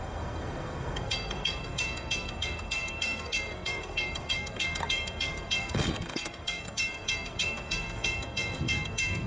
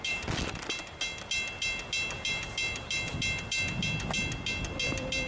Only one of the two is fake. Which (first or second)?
first